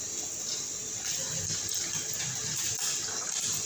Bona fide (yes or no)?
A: yes